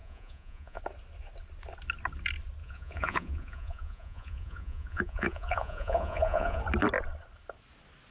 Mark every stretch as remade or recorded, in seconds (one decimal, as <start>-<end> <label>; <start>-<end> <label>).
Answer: 0.0-0.8 remade; 0.8-2.6 recorded; 2.6-6.6 remade; 6.6-8.1 recorded